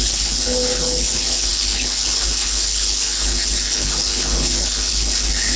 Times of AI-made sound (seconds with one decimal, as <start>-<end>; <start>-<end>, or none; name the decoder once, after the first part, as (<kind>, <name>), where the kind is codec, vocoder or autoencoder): 0.0-5.6 (codec, HILCodec)